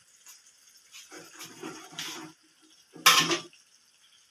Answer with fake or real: real